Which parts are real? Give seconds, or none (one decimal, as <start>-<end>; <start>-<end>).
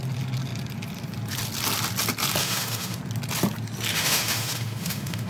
0.0-2.4; 3.0-3.9